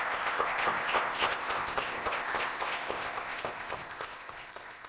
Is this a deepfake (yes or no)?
yes